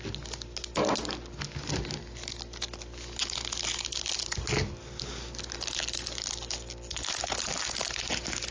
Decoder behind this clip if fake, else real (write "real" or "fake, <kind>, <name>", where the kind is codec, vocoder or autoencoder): real